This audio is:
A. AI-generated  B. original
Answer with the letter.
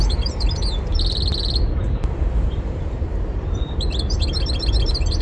A